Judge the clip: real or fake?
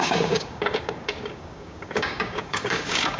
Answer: fake